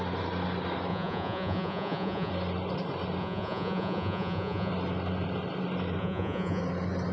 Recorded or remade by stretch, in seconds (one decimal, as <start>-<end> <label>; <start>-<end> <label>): 0.0-0.9 recorded; 0.9-2.3 remade; 2.3-3.2 recorded; 3.2-4.7 remade; 4.7-6.0 recorded; 6.0-6.6 remade; 6.6-7.1 recorded